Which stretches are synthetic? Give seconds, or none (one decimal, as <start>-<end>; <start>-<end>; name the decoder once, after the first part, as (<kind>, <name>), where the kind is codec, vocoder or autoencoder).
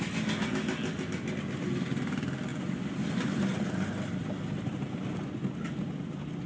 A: none